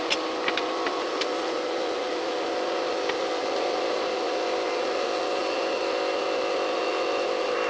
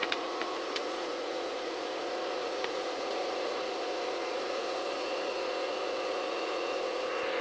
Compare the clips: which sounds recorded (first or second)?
first